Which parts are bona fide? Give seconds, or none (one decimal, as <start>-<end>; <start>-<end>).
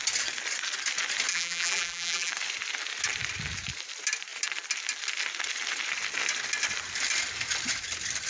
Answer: 0.0-1.3; 2.3-8.3